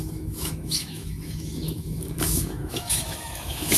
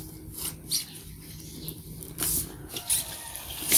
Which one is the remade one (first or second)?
first